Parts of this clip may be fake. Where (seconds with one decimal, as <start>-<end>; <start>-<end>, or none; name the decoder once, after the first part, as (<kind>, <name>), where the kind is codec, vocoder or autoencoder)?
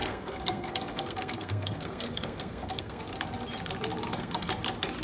0.0-3.0 (codec, SNAC); 4.0-4.5